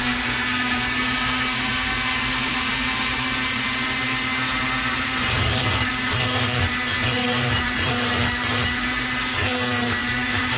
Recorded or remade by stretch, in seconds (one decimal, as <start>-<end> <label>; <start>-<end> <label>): 0.0-4.9 recorded; 4.9-5.9 remade; 5.9-7.2 recorded; 7.2-7.9 remade; 7.9-10.0 recorded; 10.0-10.6 remade